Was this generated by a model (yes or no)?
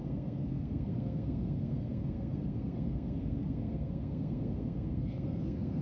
yes